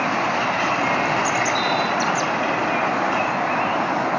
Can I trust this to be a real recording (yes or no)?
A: yes